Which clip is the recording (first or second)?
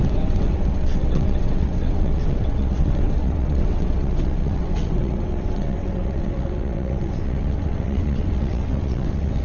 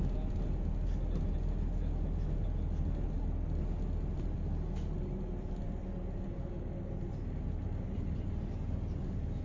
second